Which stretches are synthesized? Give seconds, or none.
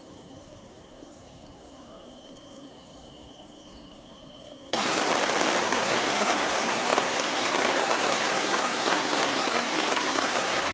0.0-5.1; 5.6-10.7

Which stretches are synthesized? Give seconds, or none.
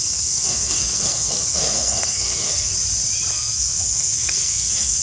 0.0-2.7; 3.3-5.0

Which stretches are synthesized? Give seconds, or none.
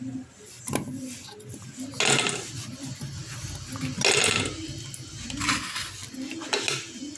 none